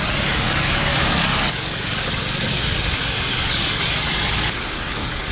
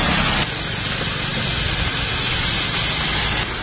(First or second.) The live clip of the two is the second